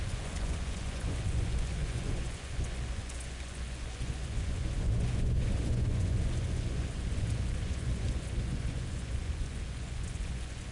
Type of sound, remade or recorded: remade